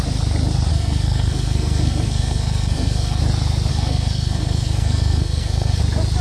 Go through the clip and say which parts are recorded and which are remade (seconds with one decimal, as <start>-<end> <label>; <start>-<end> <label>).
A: 0.0-0.7 recorded; 0.7-3.2 remade; 3.2-3.7 recorded; 3.7-5.8 remade; 5.8-6.2 recorded